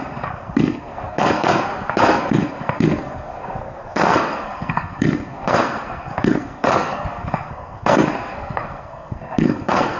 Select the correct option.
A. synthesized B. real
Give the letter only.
A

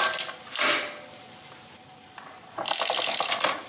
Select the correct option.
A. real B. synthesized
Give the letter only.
A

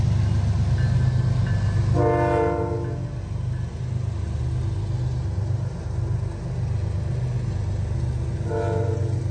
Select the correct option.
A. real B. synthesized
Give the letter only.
A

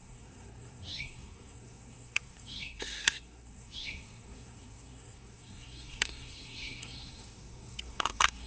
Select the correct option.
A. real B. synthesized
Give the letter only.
B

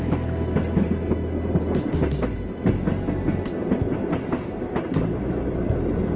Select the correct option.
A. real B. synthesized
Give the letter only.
A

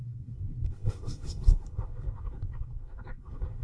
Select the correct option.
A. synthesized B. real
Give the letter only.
A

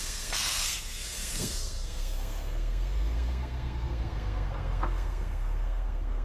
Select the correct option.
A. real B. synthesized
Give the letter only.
B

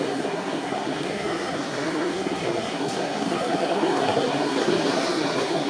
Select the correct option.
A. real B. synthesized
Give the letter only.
B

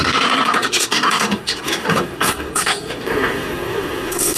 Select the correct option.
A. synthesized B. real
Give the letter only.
A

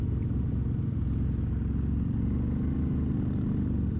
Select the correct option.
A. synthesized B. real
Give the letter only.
B